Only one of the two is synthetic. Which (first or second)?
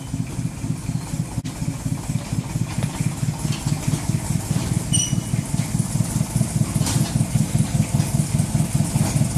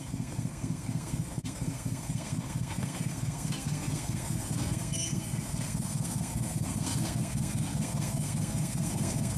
second